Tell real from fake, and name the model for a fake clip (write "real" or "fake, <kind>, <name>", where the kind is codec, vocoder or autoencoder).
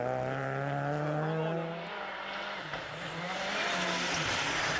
real